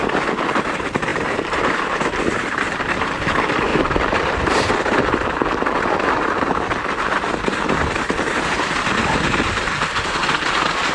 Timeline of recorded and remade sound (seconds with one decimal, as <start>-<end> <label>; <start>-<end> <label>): 0.0-1.1 recorded; 1.1-3.1 remade; 3.1-3.7 recorded; 3.7-4.7 remade; 4.7-10.9 recorded